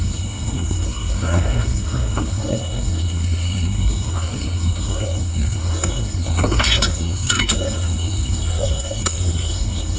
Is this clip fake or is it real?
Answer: fake